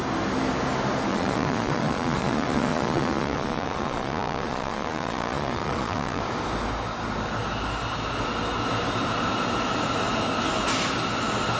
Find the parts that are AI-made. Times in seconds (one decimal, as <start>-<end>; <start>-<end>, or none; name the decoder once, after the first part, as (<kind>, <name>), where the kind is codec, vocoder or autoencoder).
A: 1.1-6.2 (vocoder, Vocos)